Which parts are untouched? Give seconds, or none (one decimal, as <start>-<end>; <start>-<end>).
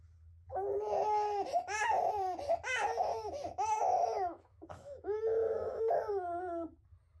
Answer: 0.0-3.1; 5.8-7.2